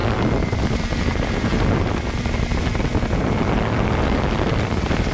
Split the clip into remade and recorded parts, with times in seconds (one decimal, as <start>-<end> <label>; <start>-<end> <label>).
0.0-1.0 recorded; 1.0-1.5 remade; 1.5-4.6 recorded; 4.6-5.1 remade